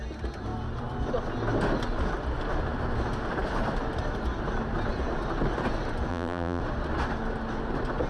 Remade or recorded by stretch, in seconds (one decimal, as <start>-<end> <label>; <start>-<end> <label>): 0.0-6.1 recorded; 6.1-6.6 remade; 6.6-8.1 recorded